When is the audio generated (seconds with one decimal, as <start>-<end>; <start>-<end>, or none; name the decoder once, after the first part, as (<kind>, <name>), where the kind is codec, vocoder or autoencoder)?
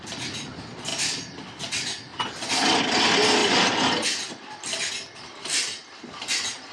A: none